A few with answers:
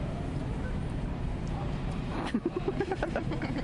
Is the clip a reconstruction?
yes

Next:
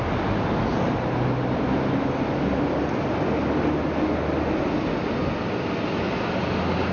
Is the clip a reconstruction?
no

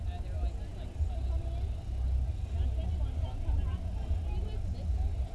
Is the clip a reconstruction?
no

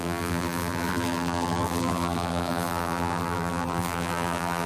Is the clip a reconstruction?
yes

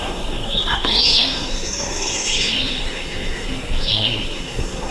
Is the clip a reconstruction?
yes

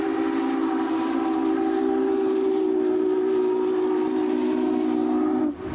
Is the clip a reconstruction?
no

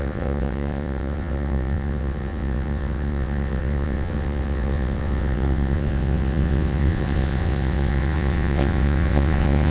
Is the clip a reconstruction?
yes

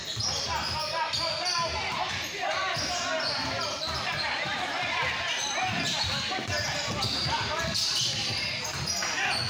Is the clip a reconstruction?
no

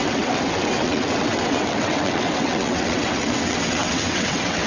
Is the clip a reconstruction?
yes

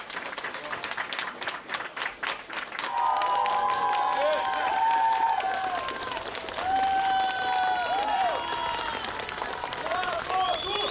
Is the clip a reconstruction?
no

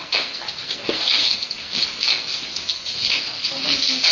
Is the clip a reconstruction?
yes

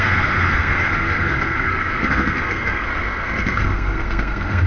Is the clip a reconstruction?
yes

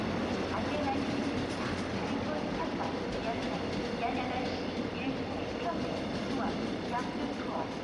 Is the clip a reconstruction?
no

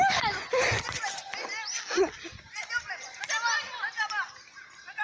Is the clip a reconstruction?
no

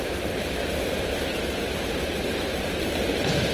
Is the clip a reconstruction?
yes